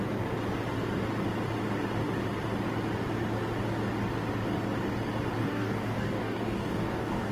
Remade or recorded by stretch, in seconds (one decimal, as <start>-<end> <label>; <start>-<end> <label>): 0.0-5.4 recorded; 5.4-7.3 remade